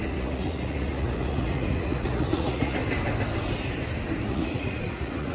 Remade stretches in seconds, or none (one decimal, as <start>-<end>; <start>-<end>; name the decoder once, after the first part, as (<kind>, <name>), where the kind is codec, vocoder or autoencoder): 0.0-2.8 (vocoder, Vocos); 4.3-5.3